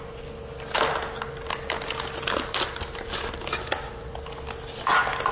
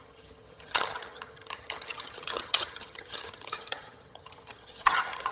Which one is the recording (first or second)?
first